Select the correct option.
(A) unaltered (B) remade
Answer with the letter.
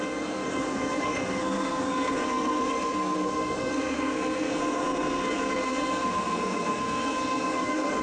B